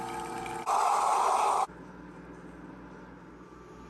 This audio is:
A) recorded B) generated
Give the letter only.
A